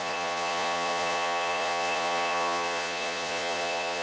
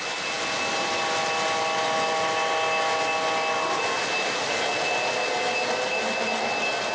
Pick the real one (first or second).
second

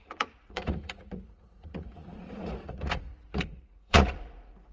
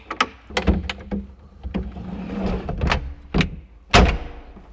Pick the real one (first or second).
second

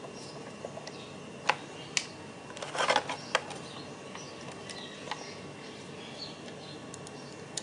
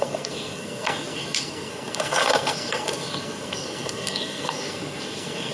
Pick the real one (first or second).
first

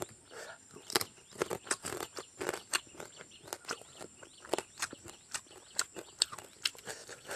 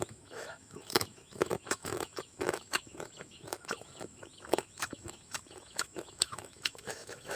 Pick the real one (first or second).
first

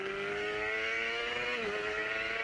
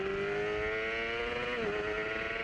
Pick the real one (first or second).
second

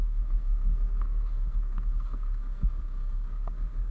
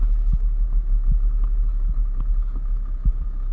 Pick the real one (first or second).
second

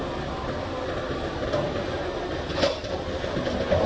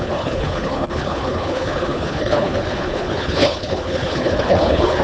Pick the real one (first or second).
first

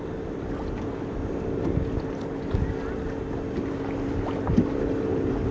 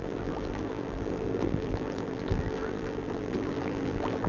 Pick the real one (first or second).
first